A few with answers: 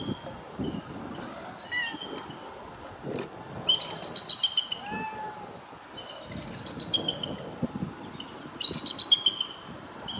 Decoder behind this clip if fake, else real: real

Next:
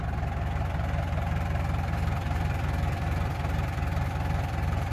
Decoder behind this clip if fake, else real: real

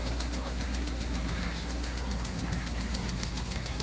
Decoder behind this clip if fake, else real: fake, codec, SNAC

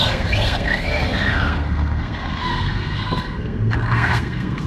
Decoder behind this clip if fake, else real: fake, codec, SNAC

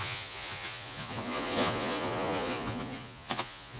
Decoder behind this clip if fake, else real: fake, vocoder, Vocos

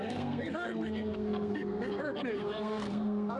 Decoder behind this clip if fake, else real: fake, codec, SNAC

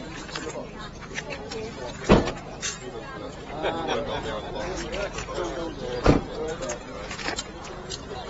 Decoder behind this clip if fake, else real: fake, vocoder, Vocos